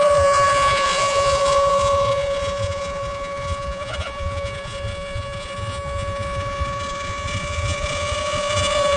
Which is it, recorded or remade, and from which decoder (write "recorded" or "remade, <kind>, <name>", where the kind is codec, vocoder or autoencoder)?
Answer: remade, vocoder, Vocos